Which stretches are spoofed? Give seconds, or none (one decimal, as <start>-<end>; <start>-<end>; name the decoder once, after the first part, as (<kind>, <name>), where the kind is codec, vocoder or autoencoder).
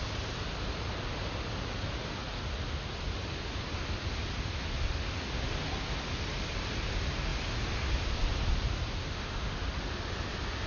9.0-9.5 (autoencoder, DAC-VAE)